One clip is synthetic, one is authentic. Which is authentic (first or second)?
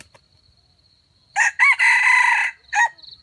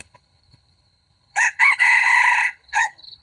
first